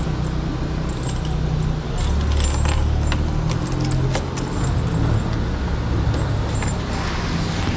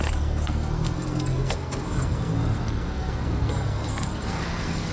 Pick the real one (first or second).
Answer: first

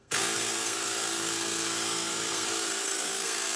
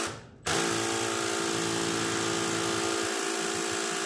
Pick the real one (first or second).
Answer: second